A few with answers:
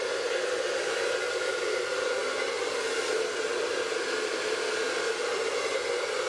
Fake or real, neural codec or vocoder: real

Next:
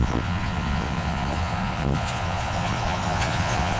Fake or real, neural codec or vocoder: fake, vocoder, Vocos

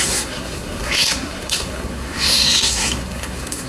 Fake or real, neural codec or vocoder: fake, codec, SNAC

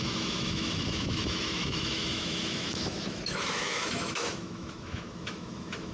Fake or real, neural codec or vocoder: fake, autoencoder, DAC-VAE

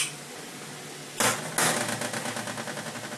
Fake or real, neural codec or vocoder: real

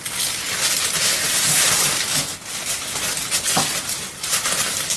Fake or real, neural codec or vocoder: real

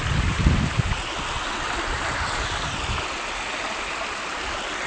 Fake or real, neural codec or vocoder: real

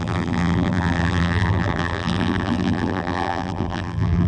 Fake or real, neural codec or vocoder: fake, vocoder, BigVGAN v2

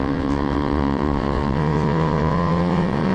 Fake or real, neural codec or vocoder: fake, vocoder, WaveNeXt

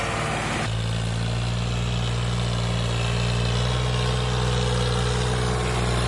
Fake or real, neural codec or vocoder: real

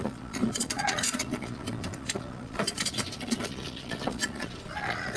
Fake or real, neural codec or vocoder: fake, vocoder, Vocos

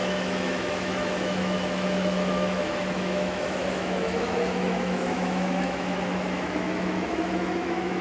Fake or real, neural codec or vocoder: fake, autoencoder, DAC-VAE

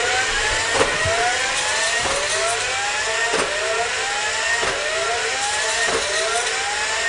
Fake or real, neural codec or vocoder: real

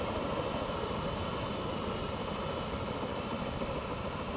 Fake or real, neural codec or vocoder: real